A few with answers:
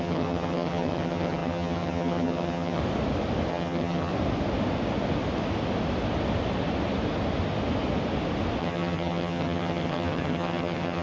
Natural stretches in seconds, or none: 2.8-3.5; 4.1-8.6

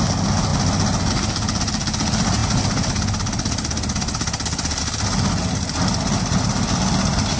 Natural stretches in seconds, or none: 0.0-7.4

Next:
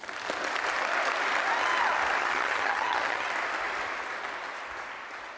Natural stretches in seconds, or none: 0.0-2.2; 3.3-5.4

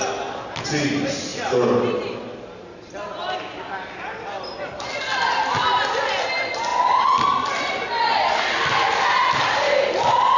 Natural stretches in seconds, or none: 0.0-10.4

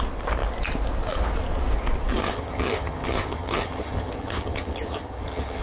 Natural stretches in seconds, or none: 0.0-2.2

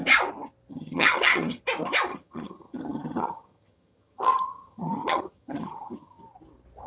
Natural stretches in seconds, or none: 0.0-0.7; 1.6-2.1; 6.2-6.9